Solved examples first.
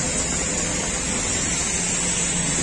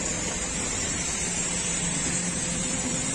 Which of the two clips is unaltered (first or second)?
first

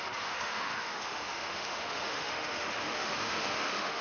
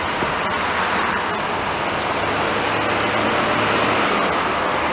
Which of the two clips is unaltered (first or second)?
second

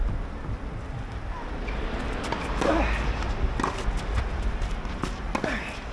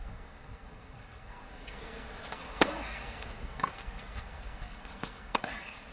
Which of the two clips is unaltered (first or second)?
first